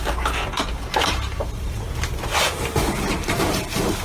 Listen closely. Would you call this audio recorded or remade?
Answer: remade